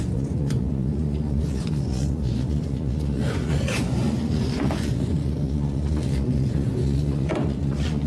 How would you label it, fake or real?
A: fake